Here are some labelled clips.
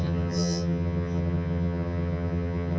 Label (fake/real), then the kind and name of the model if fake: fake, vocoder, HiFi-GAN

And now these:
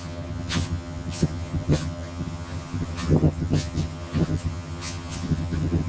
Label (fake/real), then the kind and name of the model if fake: fake, vocoder, HiFi-GAN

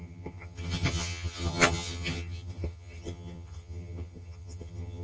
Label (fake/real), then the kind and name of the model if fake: fake, vocoder, HiFi-GAN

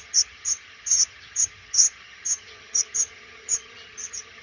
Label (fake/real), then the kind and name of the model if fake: fake, vocoder, HiFi-GAN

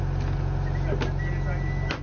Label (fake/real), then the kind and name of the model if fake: real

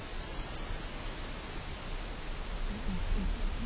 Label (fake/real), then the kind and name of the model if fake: real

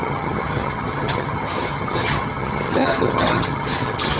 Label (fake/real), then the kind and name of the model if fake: fake, vocoder, HiFi-GAN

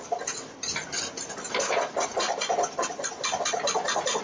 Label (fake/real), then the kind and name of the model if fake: real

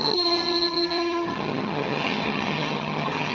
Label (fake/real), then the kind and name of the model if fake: fake, vocoder, HiFi-GAN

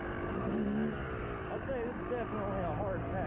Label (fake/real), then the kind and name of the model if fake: real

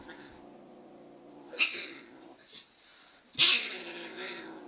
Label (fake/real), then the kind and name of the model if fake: real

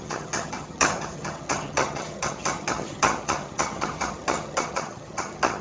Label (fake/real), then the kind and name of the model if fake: fake, vocoder, HiFi-GAN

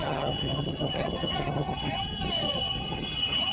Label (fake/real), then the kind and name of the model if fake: fake, vocoder, HiFi-GAN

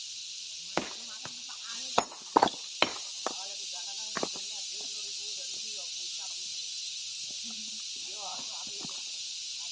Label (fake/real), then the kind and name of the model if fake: real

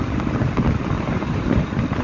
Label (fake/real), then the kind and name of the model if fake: real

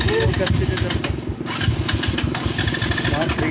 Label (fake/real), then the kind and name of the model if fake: real